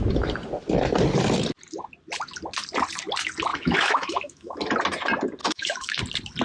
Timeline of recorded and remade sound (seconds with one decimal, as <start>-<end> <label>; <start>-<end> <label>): 0.0-3.5 recorded; 3.5-4.6 remade; 4.6-5.4 recorded; 5.4-6.0 remade; 6.0-6.4 recorded